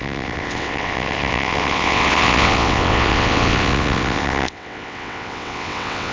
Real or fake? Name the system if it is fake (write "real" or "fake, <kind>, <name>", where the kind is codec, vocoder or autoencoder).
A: fake, vocoder, WaveNeXt